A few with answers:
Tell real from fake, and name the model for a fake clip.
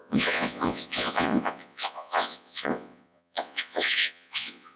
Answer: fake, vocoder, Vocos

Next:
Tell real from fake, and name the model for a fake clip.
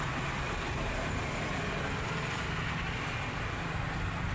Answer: real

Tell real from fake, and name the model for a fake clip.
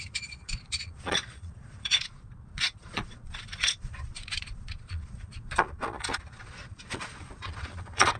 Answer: fake, vocoder, Vocos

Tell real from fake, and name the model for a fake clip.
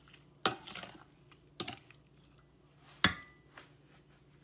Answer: real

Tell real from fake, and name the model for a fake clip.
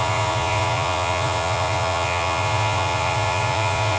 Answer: fake, vocoder, Vocos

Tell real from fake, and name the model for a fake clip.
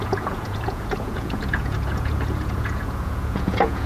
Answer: fake, vocoder, Vocos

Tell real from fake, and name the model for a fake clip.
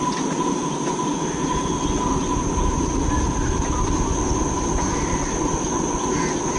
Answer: real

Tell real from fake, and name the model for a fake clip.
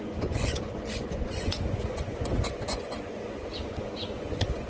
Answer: fake, vocoder, Vocos